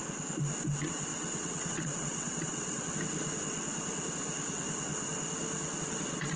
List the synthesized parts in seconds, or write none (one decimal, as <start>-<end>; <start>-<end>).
1.1-2.9